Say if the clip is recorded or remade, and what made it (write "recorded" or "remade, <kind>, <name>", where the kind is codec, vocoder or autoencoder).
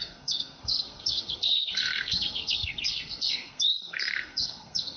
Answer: remade, codec, SNAC